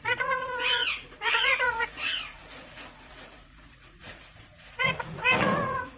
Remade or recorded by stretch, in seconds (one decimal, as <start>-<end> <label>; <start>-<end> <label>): 0.0-6.0 remade